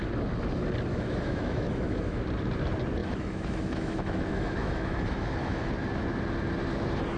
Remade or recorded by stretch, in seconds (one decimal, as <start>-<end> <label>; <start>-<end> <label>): 0.0-0.9 recorded; 0.9-2.2 remade; 2.2-3.0 recorded; 3.0-5.7 remade; 5.7-7.2 recorded